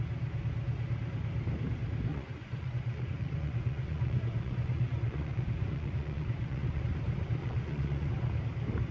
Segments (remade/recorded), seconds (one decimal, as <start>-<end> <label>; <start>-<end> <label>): 0.0-2.1 recorded; 2.1-6.8 remade; 6.8-7.4 recorded; 7.4-8.1 remade; 8.1-8.9 recorded